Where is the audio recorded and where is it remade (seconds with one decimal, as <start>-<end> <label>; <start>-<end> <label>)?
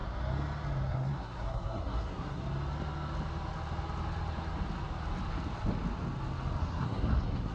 0.0-0.9 recorded; 0.9-2.4 remade; 2.4-6.6 recorded; 6.6-7.5 remade